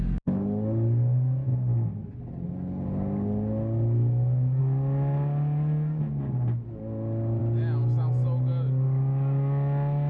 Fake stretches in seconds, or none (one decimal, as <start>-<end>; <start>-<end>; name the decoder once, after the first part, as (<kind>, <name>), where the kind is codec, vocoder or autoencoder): none